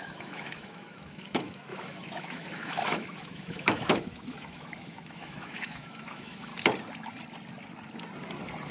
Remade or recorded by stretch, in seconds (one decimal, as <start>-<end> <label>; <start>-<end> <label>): 0.0-6.5 remade; 6.5-8.7 recorded